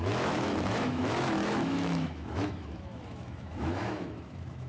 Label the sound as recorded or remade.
remade